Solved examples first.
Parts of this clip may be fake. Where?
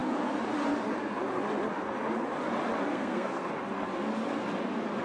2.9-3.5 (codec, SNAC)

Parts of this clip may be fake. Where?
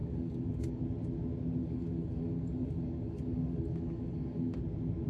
0.0-0.8 (codec, DAC); 1.6-4.6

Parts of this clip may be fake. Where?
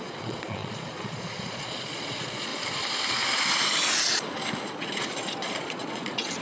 0.0-2.5 (vocoder, Vocos); 4.7-6.4